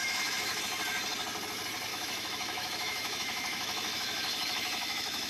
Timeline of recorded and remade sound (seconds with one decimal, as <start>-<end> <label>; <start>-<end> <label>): 0.0-0.6 remade; 0.6-1.9 recorded; 1.9-5.3 remade